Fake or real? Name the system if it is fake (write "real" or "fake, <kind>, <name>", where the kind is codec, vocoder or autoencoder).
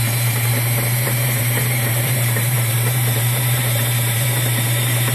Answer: fake, vocoder, BigVGAN v2